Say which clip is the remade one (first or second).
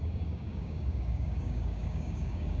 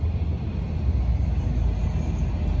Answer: first